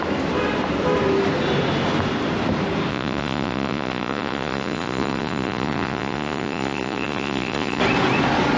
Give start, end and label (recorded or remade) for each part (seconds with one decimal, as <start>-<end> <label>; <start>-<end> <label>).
0.0-2.9 recorded; 2.9-7.8 remade; 7.8-8.6 recorded